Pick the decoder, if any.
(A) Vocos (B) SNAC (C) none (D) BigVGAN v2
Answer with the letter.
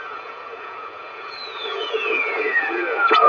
A